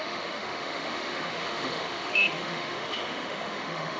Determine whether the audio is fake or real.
fake